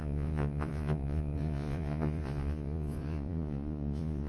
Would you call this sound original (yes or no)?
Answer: no